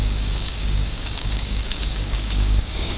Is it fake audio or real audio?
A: fake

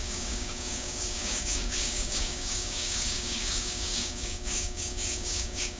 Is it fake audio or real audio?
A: fake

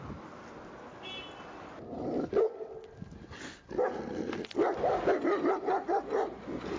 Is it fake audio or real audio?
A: real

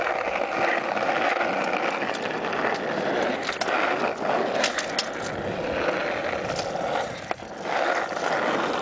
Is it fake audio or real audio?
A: real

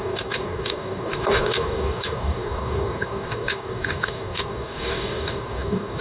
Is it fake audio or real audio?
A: fake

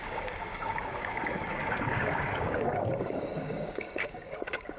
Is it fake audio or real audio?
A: fake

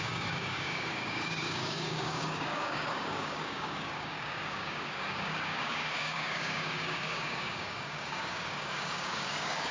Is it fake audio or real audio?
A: fake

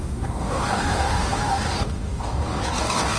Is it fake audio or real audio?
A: fake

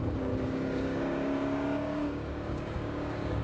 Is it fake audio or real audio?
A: fake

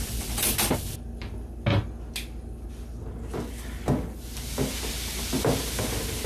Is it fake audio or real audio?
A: real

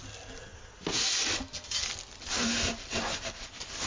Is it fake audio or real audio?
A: real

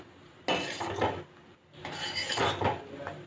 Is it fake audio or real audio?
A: real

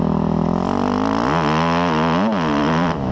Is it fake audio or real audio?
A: real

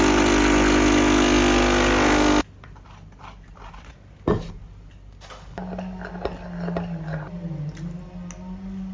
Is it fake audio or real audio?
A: real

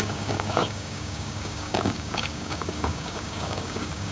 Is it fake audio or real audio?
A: fake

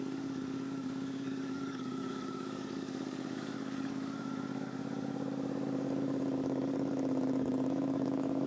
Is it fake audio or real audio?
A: fake